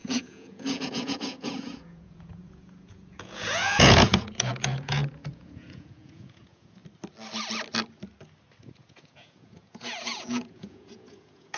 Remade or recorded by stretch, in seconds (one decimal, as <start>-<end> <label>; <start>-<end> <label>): 0.0-6.8 remade; 6.8-8.6 recorded; 8.6-11.6 remade